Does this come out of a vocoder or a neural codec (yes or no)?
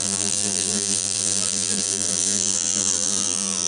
yes